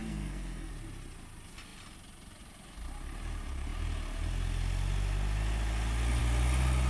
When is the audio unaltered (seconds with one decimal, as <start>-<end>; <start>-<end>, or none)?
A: 0.7-6.9